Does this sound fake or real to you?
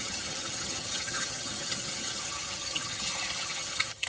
fake